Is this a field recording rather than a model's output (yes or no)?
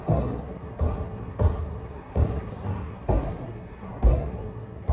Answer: no